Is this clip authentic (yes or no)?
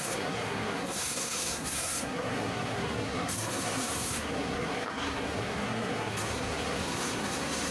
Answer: no